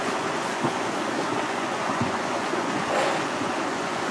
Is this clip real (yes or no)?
no